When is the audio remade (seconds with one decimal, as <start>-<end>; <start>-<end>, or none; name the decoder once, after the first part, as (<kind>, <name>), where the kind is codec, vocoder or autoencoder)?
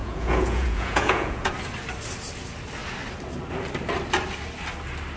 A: 0.0-1.5 (vocoder, Vocos)